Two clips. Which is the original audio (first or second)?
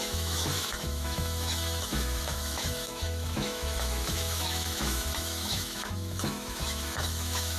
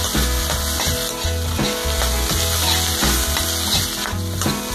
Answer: second